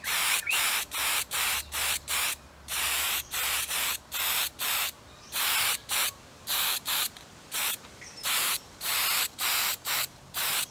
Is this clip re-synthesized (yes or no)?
yes